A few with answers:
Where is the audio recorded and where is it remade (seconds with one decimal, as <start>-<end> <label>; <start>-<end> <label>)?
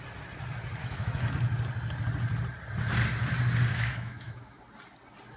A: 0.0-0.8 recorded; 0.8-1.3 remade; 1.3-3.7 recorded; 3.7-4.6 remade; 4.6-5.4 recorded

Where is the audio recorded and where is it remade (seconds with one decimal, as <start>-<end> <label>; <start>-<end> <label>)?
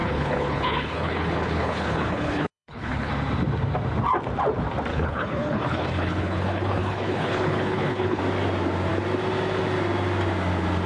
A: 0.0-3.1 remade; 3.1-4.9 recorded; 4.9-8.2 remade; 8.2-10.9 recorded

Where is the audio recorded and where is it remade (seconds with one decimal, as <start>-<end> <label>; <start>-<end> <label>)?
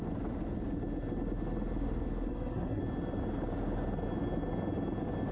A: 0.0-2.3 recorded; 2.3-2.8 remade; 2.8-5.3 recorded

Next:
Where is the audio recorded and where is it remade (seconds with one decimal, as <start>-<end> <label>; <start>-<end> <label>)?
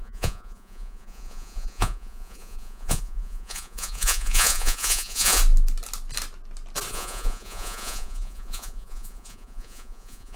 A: 0.0-5.4 remade; 5.4-6.9 recorded; 6.9-10.4 remade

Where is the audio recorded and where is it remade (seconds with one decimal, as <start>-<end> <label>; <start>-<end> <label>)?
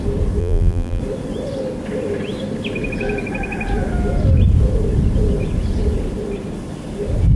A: 0.0-0.4 recorded; 0.4-1.0 remade; 1.0-7.4 recorded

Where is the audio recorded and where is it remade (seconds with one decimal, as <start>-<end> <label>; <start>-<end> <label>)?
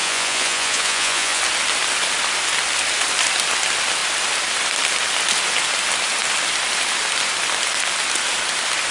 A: 0.0-1.4 remade; 1.4-8.9 recorded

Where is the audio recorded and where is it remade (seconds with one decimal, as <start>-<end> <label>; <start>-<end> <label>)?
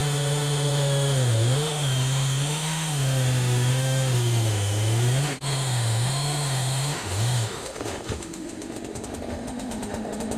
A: 0.0-10.4 remade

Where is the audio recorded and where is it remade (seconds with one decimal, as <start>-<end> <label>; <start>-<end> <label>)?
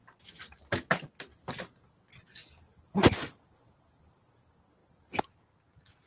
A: 0.0-1.3 recorded; 1.3-1.9 remade; 1.9-2.4 recorded; 2.4-4.3 remade; 4.3-4.8 recorded; 4.8-5.6 remade; 5.6-6.1 recorded